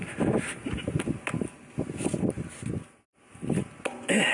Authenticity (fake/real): real